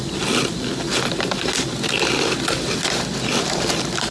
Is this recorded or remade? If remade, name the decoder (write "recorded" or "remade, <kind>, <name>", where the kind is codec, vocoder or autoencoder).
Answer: recorded